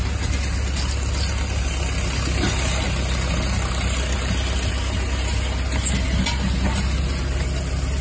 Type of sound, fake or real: real